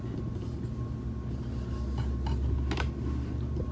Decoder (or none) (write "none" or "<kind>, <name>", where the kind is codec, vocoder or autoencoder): none